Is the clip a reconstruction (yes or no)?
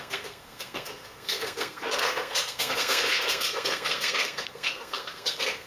yes